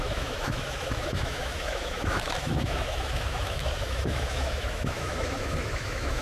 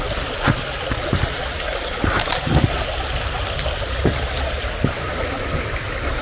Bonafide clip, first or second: second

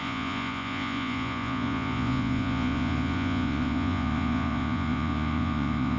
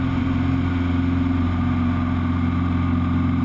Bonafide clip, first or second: second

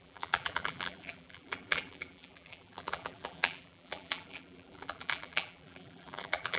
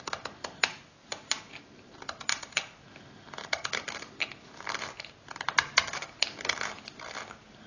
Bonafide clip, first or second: second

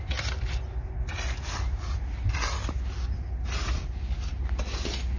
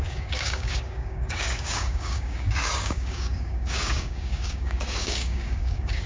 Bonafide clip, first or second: first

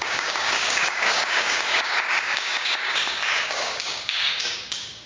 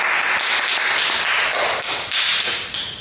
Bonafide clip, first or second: second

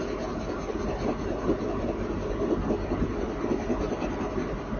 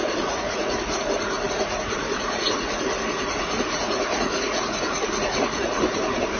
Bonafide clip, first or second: first